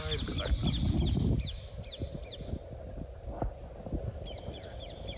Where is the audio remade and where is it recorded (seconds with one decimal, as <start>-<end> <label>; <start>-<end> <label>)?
0.0-5.2 recorded